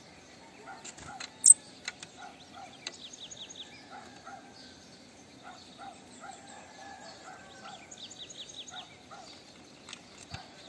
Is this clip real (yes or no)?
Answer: yes